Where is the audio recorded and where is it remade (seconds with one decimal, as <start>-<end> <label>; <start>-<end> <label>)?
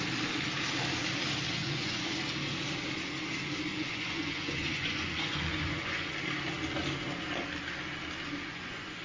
0.0-1.6 recorded; 1.6-2.2 remade; 2.2-3.7 recorded; 3.7-6.1 remade; 6.1-8.5 recorded; 8.5-9.0 remade